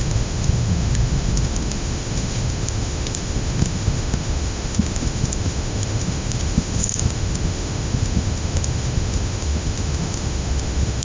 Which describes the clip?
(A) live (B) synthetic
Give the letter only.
B